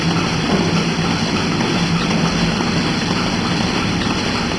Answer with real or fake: real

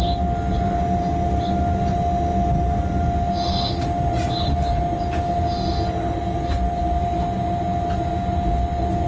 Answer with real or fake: real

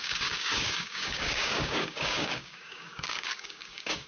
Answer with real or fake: fake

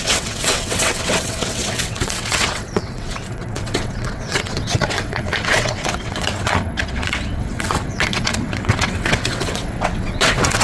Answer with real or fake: fake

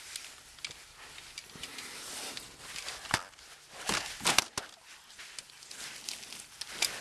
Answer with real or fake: real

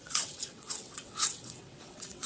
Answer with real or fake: fake